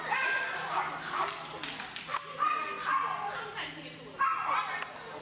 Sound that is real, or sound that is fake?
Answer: real